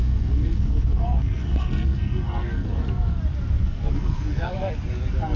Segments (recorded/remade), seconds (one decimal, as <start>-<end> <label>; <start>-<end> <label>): 0.0-3.2 remade; 3.2-3.6 recorded; 3.6-4.7 remade; 4.7-5.4 recorded